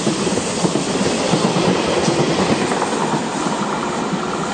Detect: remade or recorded recorded